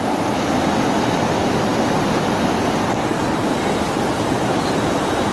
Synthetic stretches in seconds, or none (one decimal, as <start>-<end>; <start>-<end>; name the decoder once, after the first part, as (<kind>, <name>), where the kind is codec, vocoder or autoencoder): none